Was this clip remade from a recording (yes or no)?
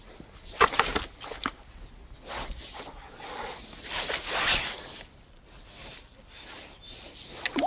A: no